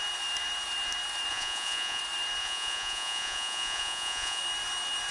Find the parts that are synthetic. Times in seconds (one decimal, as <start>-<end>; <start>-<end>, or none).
1.3-2.0; 2.4-4.4